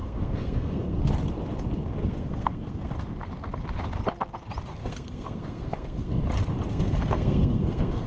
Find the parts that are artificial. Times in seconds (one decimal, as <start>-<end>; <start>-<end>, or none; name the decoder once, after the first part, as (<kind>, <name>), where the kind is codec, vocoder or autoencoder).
0.0-1.0 (codec, SNAC); 2.0-2.9; 4.8-6.2; 6.7-8.1